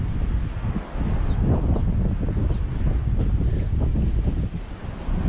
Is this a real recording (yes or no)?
yes